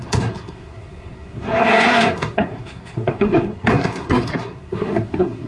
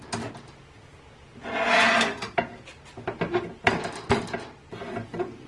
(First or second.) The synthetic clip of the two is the first